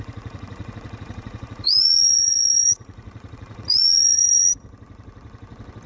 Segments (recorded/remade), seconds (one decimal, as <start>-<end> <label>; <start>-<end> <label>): 0.0-4.5 remade; 4.5-5.9 recorded